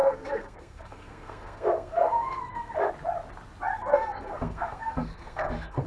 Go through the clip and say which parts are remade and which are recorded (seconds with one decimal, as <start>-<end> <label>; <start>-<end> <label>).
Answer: 0.0-2.9 remade; 2.9-3.7 recorded; 3.7-5.9 remade